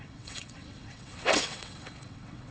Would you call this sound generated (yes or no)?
yes